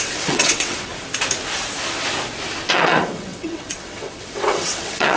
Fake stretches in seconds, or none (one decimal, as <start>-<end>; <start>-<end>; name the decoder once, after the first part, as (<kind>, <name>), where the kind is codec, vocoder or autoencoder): 0.0-0.9 (vocoder, WaveNeXt); 2.7-5.2